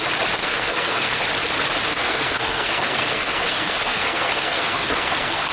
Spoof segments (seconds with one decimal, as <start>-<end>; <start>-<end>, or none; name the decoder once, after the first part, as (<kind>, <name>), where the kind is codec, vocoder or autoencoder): 0.4-1.2 (codec, SNAC); 1.9-5.5